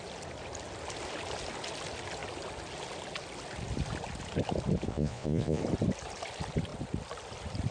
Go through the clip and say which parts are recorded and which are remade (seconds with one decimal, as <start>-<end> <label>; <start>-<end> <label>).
0.0-4.9 recorded; 4.9-5.6 remade; 5.6-7.7 recorded